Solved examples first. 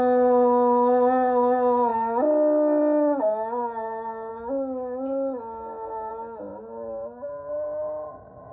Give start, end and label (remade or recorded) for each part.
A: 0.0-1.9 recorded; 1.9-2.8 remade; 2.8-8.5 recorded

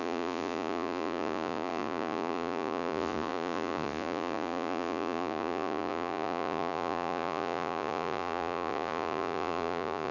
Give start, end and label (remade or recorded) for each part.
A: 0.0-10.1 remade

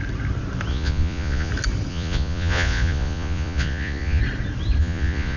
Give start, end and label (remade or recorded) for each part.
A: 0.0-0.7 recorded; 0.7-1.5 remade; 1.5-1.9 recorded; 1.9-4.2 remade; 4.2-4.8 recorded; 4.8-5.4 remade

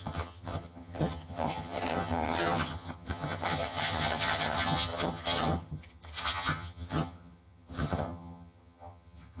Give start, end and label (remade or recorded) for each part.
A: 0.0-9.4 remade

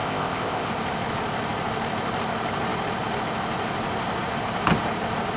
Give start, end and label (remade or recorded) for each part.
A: 0.0-0.7 remade; 0.7-5.4 recorded